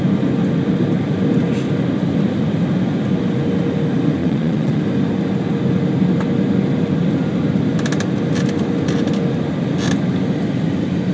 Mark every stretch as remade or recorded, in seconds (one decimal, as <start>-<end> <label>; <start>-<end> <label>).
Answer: 0.0-4.2 recorded; 4.2-4.8 remade; 4.8-11.1 recorded